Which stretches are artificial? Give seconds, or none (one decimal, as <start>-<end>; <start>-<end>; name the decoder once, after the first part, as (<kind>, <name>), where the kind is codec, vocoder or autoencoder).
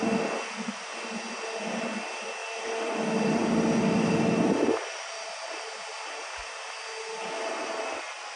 2.4-4.1 (vocoder, BigVGAN v2)